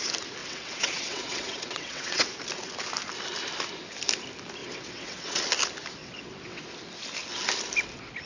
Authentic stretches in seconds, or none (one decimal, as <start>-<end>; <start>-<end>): 0.0-0.4; 2.3-4.6; 5.4-6.0; 6.6-8.3